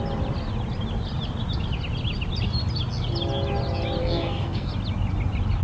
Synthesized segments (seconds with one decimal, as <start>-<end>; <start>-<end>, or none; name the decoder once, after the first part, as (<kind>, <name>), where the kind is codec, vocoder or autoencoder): 4.0-4.7 (codec, SNAC)